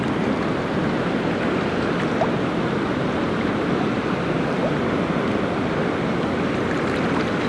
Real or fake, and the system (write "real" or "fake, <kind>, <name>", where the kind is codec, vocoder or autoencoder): real